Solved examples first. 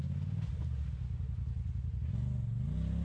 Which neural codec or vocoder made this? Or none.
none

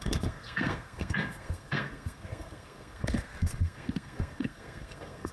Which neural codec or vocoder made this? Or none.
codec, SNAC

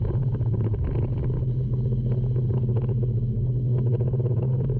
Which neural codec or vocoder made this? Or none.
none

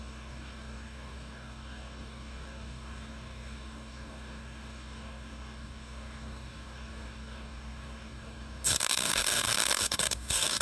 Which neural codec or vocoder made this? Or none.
codec, DAC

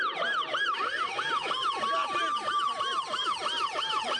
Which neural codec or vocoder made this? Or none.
none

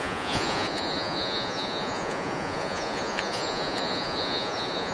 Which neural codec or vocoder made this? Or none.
vocoder, Vocos